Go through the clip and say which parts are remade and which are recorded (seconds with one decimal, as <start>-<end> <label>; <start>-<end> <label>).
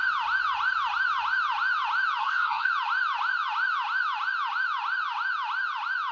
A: 0.0-2.2 recorded; 2.2-2.7 remade; 2.7-6.1 recorded